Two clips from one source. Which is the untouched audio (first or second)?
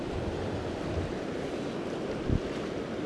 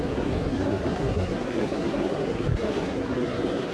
first